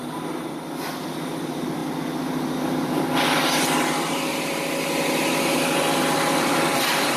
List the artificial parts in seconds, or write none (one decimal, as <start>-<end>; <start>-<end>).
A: 6.7-7.2